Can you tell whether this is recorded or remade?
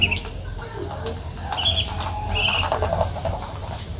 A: recorded